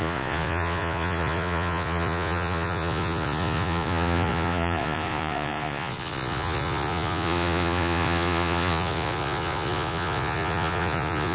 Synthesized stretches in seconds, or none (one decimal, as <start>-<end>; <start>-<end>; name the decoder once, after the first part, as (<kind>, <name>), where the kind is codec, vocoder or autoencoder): 0.0-11.3 (vocoder, Vocos)

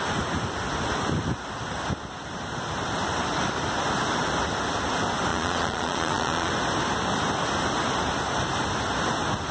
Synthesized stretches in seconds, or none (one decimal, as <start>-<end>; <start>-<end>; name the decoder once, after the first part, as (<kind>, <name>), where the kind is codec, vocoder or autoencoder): 5.3-6.5 (vocoder, Vocos)